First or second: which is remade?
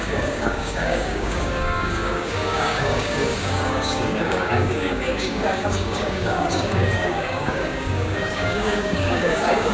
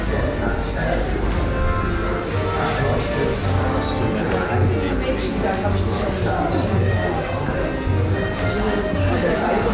first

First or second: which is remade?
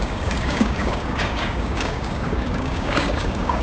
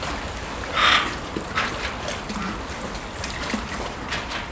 first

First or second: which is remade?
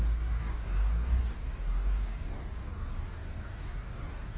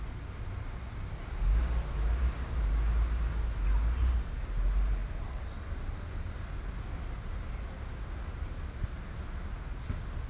first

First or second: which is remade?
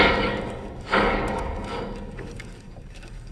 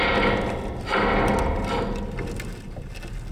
first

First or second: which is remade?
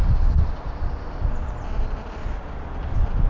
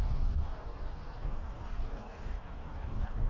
second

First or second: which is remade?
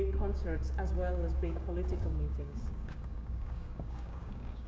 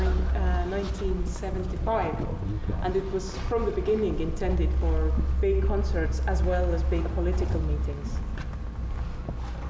first